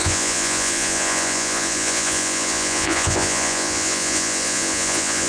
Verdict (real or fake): fake